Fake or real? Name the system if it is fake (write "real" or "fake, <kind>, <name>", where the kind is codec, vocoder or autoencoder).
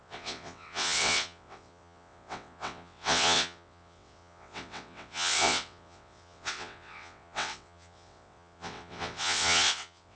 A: fake, vocoder, WaveNeXt